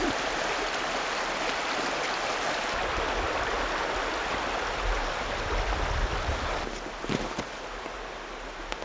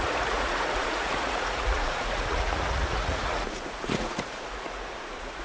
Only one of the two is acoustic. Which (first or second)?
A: first